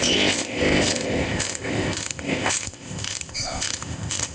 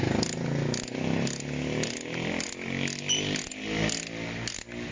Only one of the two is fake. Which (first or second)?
first